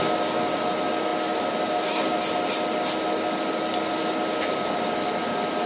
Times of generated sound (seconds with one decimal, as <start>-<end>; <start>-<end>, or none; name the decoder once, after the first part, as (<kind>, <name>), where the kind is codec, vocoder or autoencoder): none